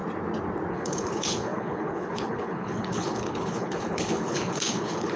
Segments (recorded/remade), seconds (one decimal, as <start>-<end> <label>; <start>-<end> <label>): 0.0-0.7 recorded; 0.7-5.2 remade

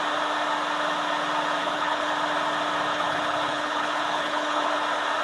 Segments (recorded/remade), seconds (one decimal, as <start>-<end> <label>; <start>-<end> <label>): 0.0-1.6 recorded; 1.6-2.1 remade; 2.1-2.9 recorded; 2.9-4.7 remade; 4.7-5.2 recorded

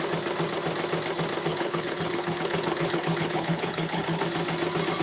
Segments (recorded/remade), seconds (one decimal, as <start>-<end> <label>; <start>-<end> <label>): 0.0-1.5 recorded; 1.5-4.2 remade; 4.2-5.0 recorded